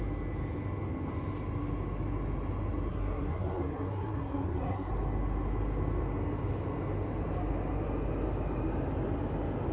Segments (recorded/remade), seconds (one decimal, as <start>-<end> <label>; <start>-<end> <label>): 0.0-2.9 recorded; 2.9-4.9 remade; 4.9-9.7 recorded